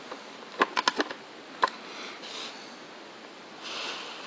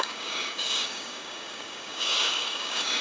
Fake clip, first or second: second